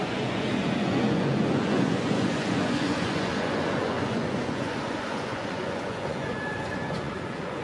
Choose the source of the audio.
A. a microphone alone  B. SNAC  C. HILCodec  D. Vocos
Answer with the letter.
D